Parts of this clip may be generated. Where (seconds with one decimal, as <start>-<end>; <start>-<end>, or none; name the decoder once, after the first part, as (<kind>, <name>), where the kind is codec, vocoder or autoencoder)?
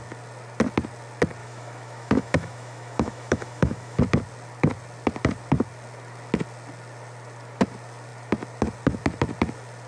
1.4-4.0 (autoencoder, DAC-VAE)